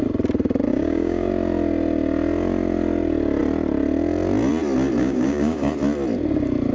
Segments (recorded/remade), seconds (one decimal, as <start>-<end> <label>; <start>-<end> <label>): 0.0-0.7 recorded; 0.7-1.3 remade; 1.3-5.0 recorded; 5.0-5.7 remade; 5.7-6.7 recorded